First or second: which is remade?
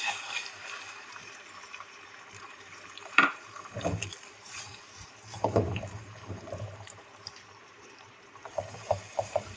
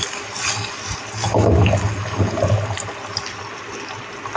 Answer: first